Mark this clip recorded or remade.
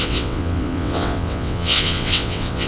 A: remade